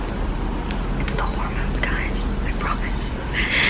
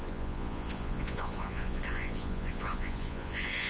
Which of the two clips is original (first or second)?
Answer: first